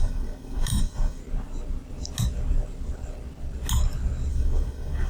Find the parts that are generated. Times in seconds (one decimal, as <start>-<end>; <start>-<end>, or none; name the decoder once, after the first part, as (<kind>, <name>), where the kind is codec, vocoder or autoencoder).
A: 0.0-1.2 (codec, DAC); 4.3-5.1